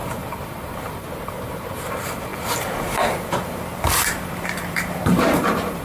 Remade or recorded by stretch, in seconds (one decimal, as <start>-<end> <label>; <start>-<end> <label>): 0.0-5.8 remade